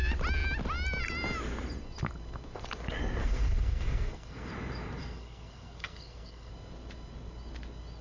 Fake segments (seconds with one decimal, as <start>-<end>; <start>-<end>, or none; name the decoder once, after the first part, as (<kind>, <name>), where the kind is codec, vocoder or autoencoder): 3.2-4.5 (codec, SNAC); 5.0-6.5